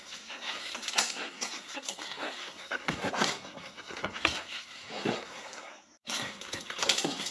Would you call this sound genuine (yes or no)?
no